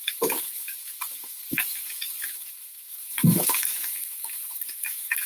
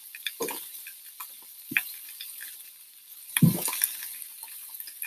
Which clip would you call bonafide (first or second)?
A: second